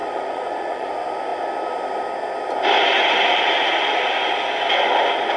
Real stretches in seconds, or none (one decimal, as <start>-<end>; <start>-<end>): 0.9-5.4